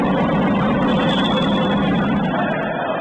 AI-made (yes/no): no